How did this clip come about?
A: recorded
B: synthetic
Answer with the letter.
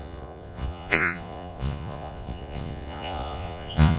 B